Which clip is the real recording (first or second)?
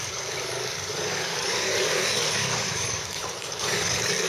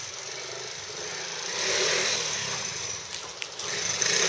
second